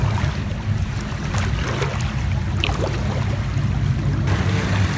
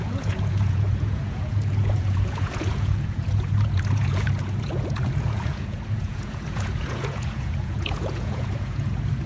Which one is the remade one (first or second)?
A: second